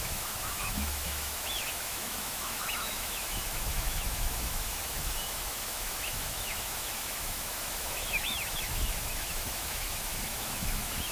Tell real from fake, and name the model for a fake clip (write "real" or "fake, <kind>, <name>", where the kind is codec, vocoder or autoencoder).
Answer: fake, autoencoder, DAC-VAE